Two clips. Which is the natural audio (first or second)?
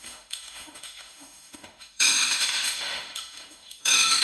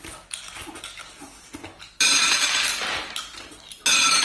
second